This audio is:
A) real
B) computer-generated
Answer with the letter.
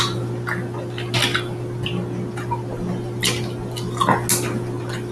A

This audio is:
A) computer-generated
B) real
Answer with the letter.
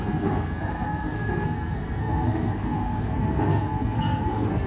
A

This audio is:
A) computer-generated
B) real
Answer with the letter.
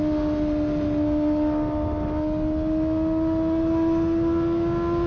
B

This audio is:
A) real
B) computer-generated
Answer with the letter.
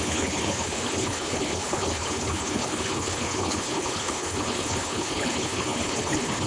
B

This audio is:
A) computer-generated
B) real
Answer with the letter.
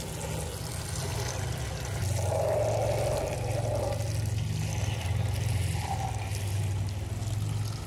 B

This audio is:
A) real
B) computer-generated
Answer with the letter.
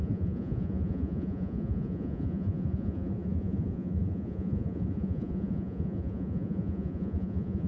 B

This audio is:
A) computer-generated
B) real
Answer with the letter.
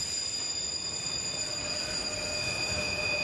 B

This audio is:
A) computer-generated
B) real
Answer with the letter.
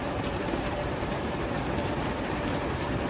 A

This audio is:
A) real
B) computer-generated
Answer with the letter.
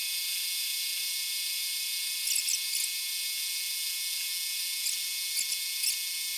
A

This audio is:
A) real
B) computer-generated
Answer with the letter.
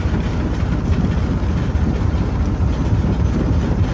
A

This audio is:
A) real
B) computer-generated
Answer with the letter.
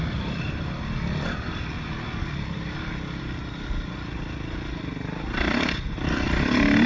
A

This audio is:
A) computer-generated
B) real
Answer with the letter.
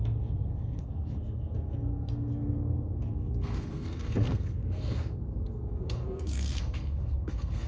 A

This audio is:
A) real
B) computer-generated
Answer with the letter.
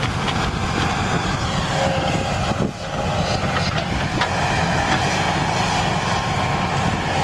A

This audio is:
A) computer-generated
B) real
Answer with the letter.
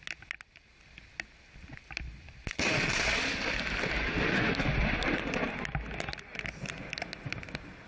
B